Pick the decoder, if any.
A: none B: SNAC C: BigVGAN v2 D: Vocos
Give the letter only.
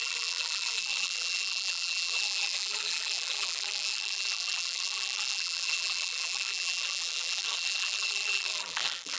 C